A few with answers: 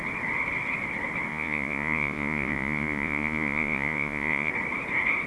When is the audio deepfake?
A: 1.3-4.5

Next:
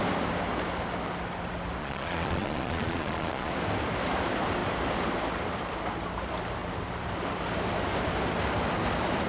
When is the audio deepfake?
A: 1.8-3.5